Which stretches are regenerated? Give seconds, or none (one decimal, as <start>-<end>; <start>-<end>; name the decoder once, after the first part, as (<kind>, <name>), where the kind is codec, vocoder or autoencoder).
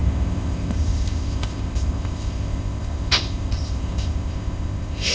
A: 0.0-5.1 (codec, ZipCodec)